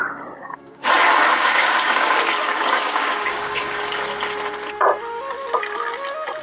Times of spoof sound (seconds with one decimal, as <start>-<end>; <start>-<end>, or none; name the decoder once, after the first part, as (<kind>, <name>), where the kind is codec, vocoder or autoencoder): 0.4-0.9 (codec, DAC); 1.3-4.0